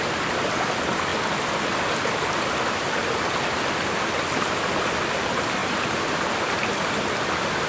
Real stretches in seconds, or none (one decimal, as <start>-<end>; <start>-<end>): 0.0-5.6